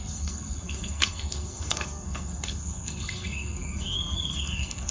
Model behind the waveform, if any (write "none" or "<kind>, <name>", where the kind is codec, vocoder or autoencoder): codec, SNAC